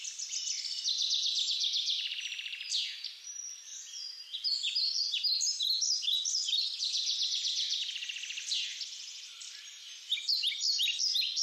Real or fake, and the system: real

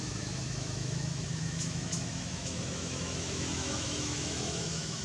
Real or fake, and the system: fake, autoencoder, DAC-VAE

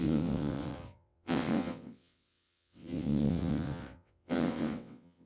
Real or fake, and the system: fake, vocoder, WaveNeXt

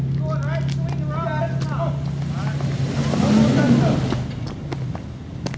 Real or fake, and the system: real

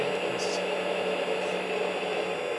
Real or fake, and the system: real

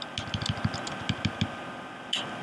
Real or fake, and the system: real